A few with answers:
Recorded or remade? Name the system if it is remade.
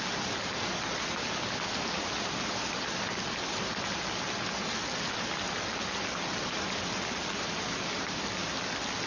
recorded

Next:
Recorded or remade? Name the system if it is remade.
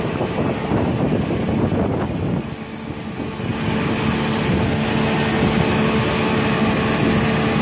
recorded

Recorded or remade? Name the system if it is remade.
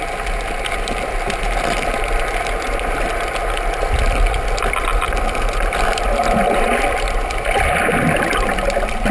recorded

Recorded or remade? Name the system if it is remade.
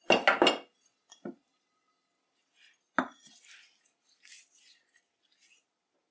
recorded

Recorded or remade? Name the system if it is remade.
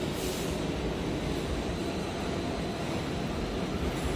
recorded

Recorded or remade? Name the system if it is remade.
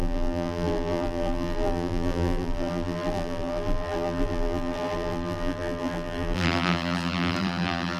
remade, vocoder, BigVGAN v2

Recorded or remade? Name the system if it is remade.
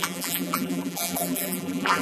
remade, vocoder, BigVGAN v2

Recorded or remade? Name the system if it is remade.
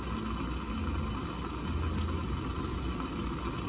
recorded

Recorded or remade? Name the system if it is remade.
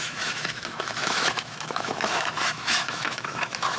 remade, autoencoder, DAC-VAE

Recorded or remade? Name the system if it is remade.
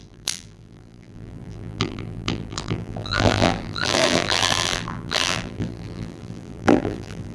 remade, vocoder, BigVGAN v2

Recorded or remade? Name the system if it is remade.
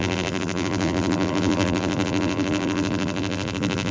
remade, vocoder, BigVGAN v2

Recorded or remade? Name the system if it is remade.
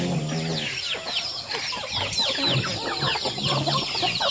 recorded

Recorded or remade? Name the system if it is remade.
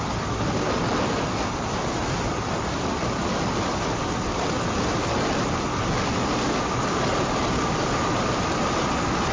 recorded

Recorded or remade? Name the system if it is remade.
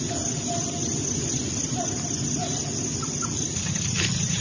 recorded